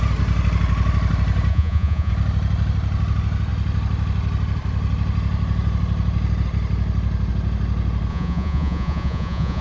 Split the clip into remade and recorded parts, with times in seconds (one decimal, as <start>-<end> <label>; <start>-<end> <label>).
0.0-1.5 recorded; 1.5-2.1 remade; 2.1-8.1 recorded; 8.1-9.6 remade